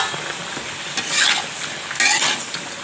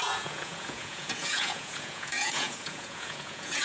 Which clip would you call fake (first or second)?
second